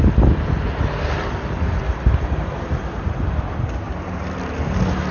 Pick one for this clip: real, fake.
real